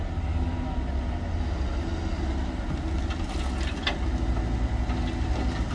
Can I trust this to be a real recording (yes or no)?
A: yes